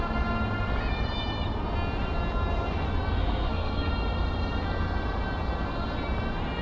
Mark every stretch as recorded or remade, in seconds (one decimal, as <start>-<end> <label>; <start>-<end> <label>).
0.0-3.2 recorded; 3.2-3.9 remade; 3.9-6.6 recorded